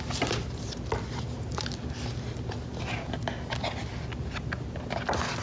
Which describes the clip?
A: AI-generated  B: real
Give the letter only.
B